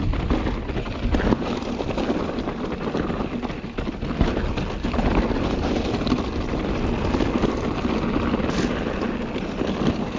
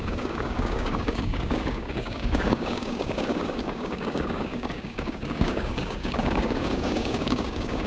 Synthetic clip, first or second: second